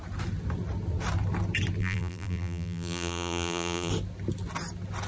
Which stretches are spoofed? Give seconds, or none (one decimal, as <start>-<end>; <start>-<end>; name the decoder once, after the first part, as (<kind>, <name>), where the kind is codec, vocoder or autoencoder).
1.8-3.9 (vocoder, BigVGAN v2)